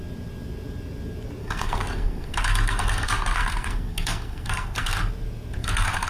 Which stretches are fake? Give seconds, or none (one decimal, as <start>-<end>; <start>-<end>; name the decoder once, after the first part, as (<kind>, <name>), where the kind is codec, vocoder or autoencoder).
1.4-5.1 (codec, SNAC); 5.6-6.1